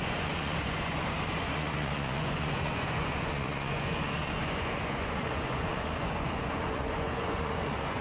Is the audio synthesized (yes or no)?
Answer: yes